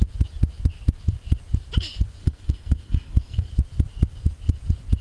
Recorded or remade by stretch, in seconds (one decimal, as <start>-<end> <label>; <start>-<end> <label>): 0.0-2.2 recorded; 2.2-3.5 remade; 3.5-5.0 recorded